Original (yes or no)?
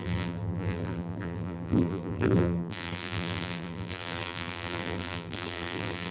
no